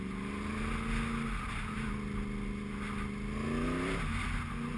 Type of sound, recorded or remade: recorded